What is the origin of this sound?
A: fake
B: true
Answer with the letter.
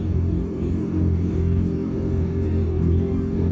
A